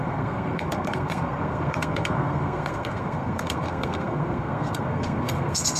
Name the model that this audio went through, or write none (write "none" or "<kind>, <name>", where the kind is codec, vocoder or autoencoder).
codec, SNAC